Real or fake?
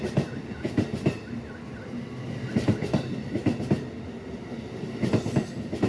real